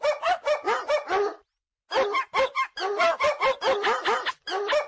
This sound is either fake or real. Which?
real